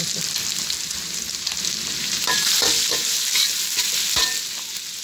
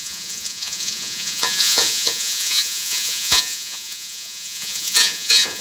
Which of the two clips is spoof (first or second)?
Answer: second